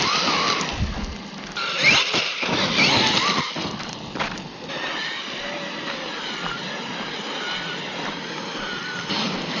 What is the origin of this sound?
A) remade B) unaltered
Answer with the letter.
B